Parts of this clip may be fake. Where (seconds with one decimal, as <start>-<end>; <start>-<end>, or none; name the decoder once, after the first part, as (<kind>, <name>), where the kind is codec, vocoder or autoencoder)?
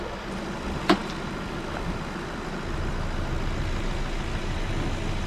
none